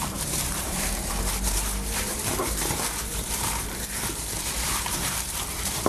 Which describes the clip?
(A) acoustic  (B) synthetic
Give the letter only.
B